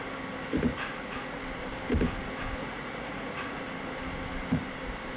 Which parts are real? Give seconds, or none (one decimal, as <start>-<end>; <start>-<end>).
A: 0.0-0.7; 1.4-2.6; 3.6-5.2